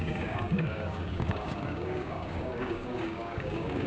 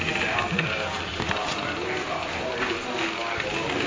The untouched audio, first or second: second